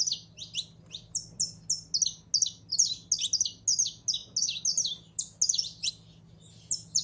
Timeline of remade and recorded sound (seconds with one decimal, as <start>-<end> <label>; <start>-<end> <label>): 0.0-7.0 recorded

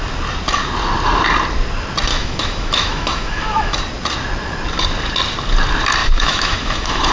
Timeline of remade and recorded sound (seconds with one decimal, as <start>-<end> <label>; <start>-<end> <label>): 0.0-2.1 recorded; 2.1-3.8 remade; 3.8-6.0 recorded; 6.0-7.1 remade

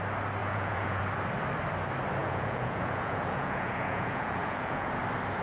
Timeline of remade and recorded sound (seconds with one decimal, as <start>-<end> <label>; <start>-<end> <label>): 0.0-0.4 recorded; 0.4-1.0 remade; 1.0-2.2 recorded; 2.2-4.9 remade; 4.9-5.4 recorded

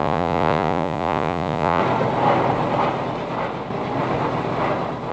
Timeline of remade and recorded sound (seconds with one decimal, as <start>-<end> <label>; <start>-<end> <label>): 0.0-1.8 remade; 1.8-5.1 recorded